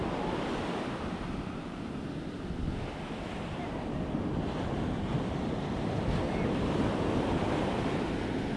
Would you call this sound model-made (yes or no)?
no